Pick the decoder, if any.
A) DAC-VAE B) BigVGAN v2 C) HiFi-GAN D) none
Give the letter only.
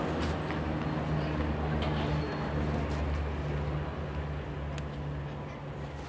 D